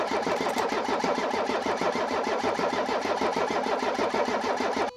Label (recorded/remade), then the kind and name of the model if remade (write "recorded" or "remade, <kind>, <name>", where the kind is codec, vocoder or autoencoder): recorded